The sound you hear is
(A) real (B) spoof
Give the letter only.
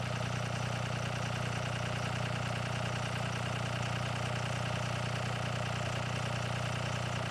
B